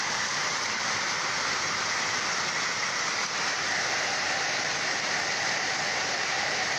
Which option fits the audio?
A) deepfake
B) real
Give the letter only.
A